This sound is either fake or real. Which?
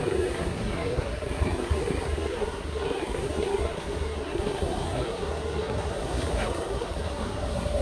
fake